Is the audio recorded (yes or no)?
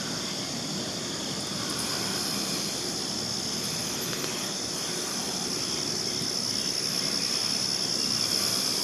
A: yes